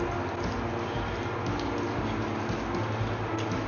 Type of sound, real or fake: real